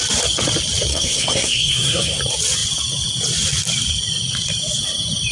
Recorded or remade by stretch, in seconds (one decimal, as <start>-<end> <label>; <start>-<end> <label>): 0.0-0.9 recorded; 0.9-2.2 remade; 2.2-5.3 recorded

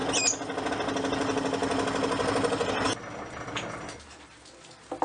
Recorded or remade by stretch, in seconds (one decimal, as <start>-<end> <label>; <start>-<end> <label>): 0.0-5.0 recorded

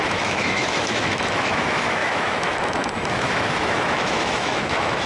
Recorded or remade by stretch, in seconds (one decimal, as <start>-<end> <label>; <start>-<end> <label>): 0.0-5.1 remade

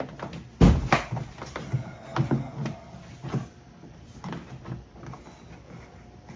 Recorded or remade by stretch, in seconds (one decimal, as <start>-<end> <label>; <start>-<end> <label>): 0.0-6.4 recorded

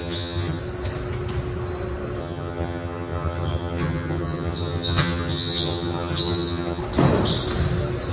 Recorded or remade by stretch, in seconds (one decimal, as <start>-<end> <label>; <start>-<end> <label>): 0.0-0.6 remade; 0.6-2.2 recorded; 2.2-6.8 remade; 6.8-8.1 recorded

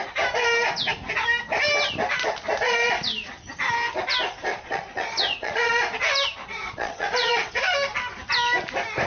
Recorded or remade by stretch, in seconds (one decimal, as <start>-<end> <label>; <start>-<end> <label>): 0.0-4.5 recorded; 4.5-5.7 remade; 5.7-6.4 recorded; 6.4-7.5 remade; 7.5-9.1 recorded

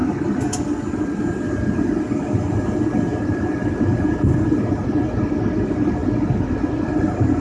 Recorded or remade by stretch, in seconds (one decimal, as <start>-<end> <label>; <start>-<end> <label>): 0.0-7.4 recorded

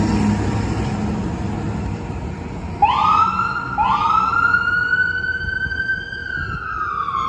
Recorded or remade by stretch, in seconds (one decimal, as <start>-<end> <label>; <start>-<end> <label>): 0.0-7.3 recorded